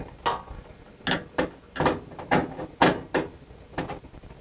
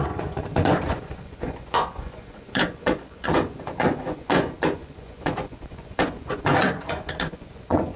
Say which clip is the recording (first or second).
first